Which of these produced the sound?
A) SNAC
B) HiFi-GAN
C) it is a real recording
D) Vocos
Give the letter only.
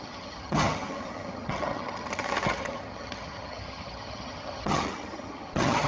B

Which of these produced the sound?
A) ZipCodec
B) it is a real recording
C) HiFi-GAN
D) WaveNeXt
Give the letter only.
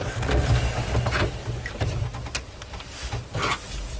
B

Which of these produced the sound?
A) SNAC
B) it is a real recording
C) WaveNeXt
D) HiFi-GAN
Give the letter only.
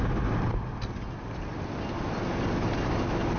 B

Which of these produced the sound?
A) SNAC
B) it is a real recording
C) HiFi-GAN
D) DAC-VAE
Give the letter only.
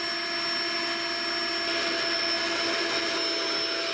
B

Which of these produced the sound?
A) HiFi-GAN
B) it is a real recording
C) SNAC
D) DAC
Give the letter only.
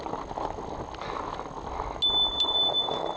B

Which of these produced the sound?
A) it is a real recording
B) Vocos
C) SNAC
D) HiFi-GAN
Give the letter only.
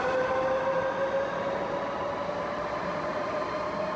A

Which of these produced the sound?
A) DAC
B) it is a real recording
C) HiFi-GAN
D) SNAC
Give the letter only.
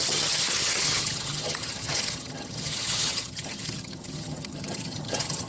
C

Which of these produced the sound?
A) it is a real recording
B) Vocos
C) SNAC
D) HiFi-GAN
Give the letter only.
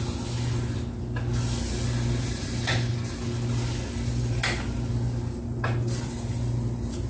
A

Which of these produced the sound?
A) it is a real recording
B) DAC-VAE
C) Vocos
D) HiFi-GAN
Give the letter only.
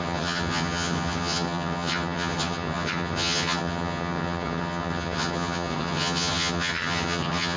D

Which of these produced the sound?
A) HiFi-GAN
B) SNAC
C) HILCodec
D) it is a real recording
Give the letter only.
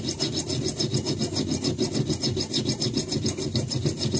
D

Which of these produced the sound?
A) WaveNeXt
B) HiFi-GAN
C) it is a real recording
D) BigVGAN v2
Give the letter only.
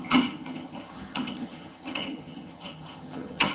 B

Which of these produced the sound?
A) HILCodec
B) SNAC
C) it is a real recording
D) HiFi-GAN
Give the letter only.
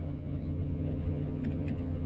D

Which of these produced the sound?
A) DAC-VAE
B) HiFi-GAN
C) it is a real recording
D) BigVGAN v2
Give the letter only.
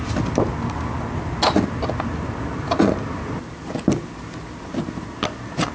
C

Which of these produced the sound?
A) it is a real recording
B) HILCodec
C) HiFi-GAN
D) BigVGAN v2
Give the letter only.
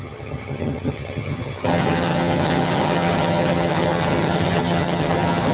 C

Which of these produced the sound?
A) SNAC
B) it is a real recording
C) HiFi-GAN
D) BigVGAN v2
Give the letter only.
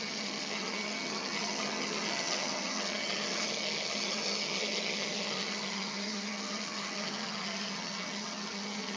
C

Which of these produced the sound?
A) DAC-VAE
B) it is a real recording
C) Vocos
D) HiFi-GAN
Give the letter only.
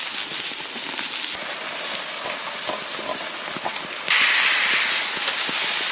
B